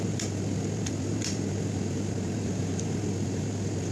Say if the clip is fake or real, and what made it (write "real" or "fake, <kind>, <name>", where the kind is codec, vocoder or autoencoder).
fake, vocoder, BigVGAN v2